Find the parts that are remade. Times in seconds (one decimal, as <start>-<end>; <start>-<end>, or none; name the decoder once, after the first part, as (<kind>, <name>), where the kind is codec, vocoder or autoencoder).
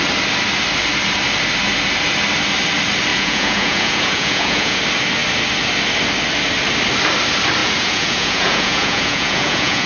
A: 3.1-4.8 (vocoder, Vocos); 7.6-9.9